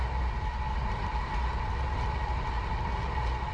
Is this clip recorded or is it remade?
recorded